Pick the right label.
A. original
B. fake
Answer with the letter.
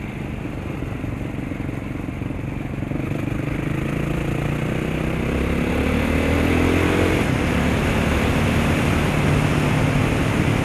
A